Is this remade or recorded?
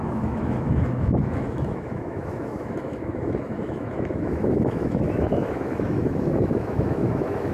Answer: remade